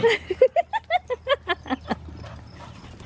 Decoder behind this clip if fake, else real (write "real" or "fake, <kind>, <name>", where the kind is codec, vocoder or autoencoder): real